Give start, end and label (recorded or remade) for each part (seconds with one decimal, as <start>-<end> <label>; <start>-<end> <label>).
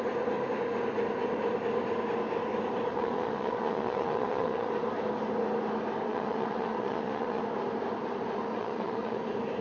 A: 0.0-2.9 recorded; 2.9-4.7 remade; 4.7-6.1 recorded; 6.1-7.4 remade; 7.4-8.5 recorded; 8.5-9.2 remade; 9.2-9.6 recorded